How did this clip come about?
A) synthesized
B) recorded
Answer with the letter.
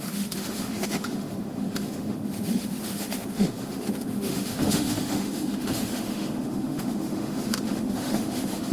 A